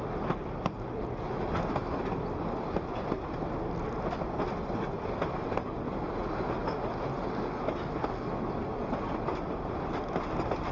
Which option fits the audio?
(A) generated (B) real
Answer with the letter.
B